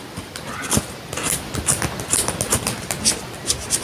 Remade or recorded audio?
recorded